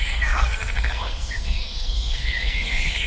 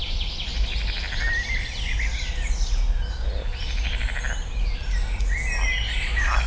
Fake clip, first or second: first